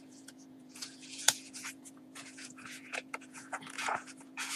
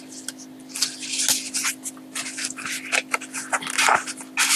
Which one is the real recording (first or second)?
second